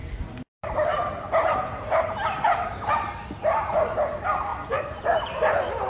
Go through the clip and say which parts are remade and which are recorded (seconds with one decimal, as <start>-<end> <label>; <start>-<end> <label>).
0.0-5.9 recorded